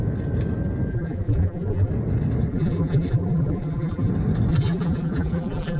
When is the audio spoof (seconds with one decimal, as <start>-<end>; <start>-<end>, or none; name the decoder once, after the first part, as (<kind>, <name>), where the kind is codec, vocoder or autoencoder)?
0.9-1.9 (vocoder, BigVGAN v2); 2.5-4.1; 4.5-5.8